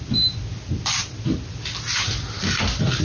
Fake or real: real